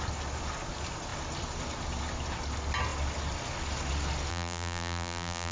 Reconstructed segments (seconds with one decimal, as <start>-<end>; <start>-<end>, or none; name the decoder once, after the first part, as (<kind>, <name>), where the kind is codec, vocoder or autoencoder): 4.3-5.5 (vocoder, BigVGAN v2)